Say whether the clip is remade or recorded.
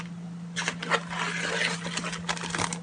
recorded